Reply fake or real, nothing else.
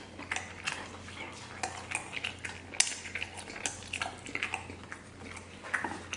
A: real